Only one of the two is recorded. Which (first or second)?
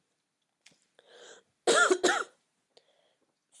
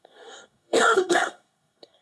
first